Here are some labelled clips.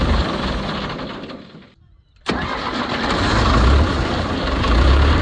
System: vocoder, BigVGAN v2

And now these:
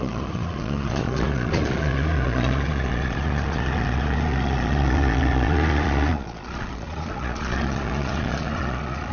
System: vocoder, Vocos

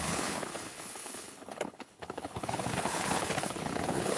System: codec, HILCodec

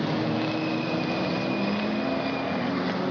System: none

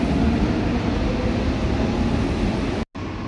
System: none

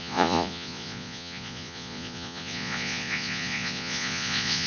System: vocoder, Vocos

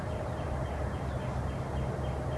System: none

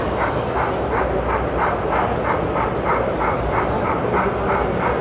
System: none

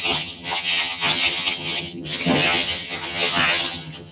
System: vocoder, HiFi-GAN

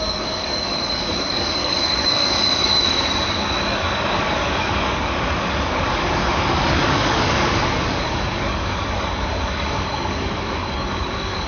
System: codec, DAC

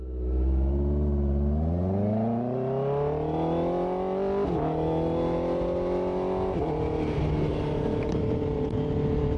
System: none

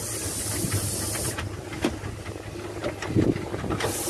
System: none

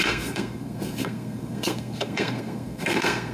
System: codec, SNAC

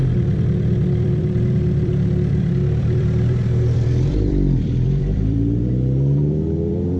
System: vocoder, BigVGAN v2